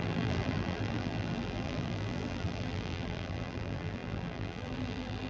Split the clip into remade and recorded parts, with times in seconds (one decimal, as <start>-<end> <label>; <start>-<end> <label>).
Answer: 0.0-5.3 remade